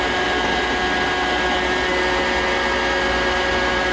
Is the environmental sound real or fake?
real